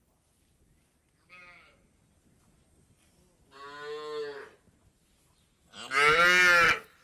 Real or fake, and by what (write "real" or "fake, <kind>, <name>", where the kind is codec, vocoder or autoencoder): real